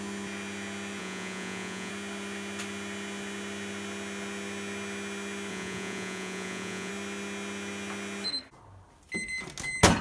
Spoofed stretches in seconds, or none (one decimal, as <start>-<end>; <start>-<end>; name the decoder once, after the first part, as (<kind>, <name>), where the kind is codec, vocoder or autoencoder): 1.0-1.9 (vocoder, Vocos); 5.5-6.9